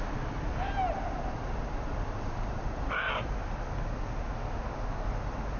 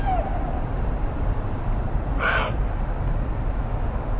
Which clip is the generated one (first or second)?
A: second